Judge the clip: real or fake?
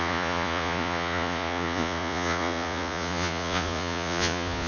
fake